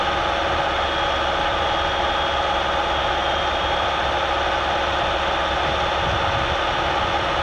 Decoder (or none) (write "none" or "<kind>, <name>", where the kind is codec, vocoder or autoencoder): none